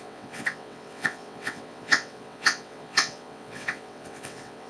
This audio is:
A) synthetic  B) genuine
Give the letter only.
A